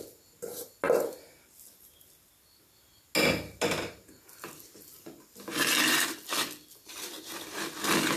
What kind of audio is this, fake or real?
real